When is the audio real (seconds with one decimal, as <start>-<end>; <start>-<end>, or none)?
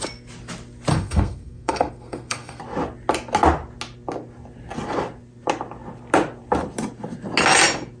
0.0-0.9; 2.6-8.0